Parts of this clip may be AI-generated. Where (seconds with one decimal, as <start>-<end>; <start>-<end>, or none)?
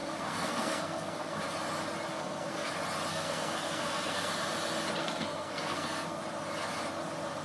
0.0-1.4; 2.1-2.7; 3.1-4.3; 5.0-6.2